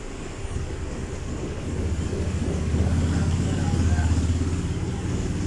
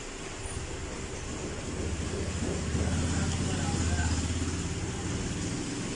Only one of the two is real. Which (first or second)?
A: second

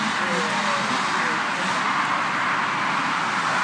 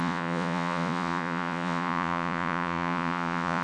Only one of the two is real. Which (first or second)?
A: first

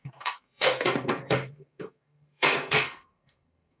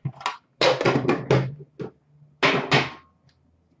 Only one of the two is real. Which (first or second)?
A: second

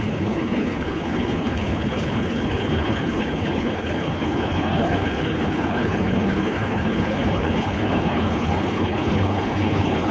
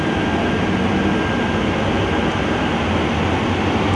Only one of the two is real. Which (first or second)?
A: second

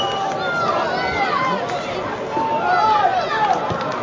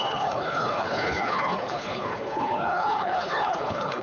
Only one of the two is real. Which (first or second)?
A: first